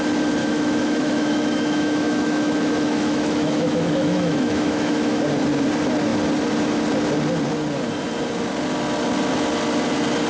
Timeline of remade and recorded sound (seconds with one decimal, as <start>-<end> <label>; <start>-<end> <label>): 0.0-0.4 recorded; 0.4-5.2 remade; 5.2-10.3 recorded